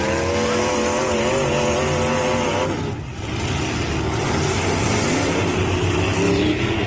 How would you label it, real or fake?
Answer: real